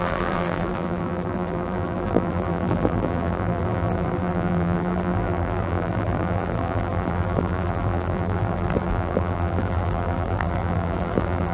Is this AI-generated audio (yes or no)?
yes